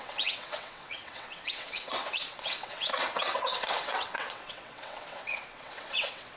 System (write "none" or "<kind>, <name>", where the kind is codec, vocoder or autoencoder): vocoder, WaveNeXt